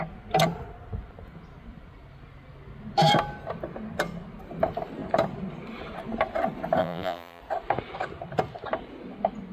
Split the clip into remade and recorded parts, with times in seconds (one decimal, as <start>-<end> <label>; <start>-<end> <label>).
0.0-6.8 recorded; 6.8-7.4 remade; 7.4-9.5 recorded